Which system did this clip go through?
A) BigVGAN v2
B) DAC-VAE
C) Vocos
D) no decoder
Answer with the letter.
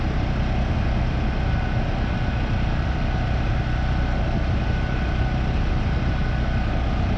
D